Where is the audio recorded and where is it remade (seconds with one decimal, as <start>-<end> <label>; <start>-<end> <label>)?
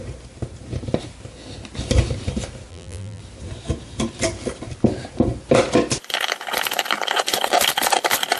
0.0-2.7 recorded; 2.7-3.2 remade; 3.2-8.4 recorded